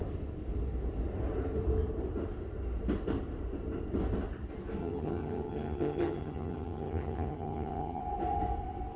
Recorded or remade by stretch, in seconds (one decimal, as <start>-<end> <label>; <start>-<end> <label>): 0.0-4.8 recorded; 4.8-8.0 remade; 8.0-9.0 recorded